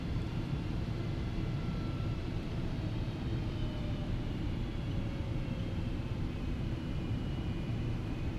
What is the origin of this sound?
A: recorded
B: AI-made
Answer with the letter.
B